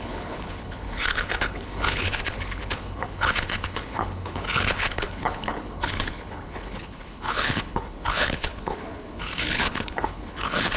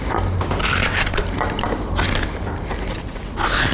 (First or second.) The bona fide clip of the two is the second